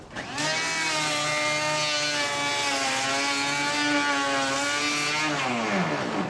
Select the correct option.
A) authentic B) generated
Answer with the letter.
A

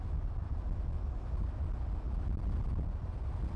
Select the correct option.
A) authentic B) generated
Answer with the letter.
A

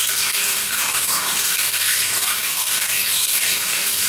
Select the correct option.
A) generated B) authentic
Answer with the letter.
A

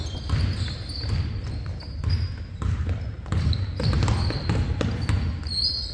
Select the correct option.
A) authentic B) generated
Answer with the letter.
A